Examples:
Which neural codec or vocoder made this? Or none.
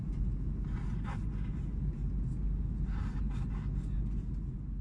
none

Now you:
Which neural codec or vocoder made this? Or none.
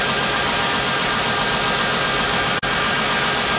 none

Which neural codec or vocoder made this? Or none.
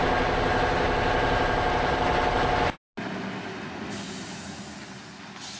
none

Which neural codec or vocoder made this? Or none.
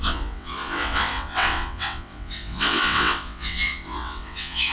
vocoder, WaveNeXt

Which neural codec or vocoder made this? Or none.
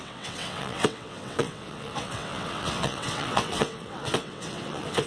vocoder, WaveNeXt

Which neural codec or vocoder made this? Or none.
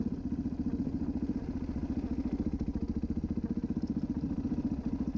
none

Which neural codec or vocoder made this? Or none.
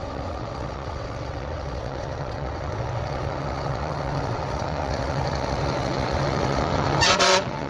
vocoder, WaveNeXt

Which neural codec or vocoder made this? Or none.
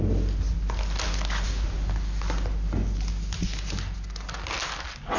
none